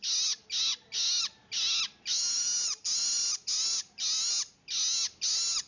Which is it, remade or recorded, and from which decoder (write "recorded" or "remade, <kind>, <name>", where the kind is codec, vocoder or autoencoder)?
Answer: recorded